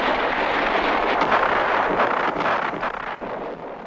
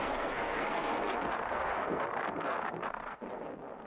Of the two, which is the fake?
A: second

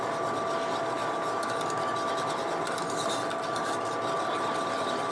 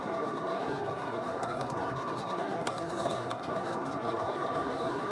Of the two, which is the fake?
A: second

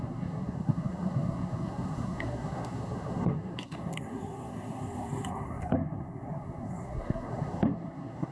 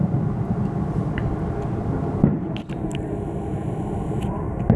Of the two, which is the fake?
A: first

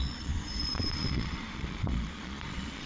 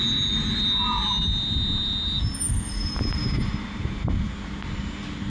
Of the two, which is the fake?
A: first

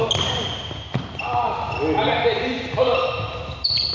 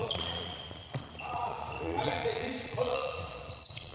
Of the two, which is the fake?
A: second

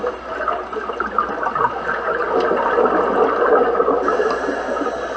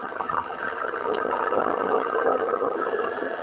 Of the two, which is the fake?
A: second